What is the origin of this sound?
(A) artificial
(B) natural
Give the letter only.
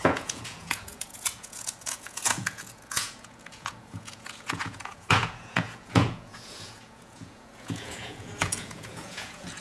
A